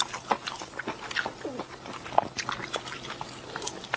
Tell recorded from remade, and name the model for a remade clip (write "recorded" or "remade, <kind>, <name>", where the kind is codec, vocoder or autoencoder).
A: recorded